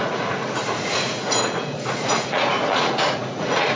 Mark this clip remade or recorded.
remade